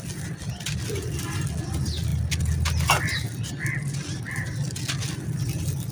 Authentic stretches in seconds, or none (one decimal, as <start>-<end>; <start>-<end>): 0.0-5.9